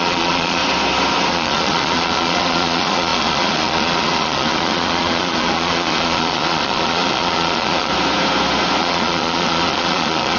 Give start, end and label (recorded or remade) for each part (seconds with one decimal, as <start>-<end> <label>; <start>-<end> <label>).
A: 0.0-0.6 remade; 0.6-1.3 recorded; 1.3-7.9 remade; 7.9-8.8 recorded; 8.8-10.4 remade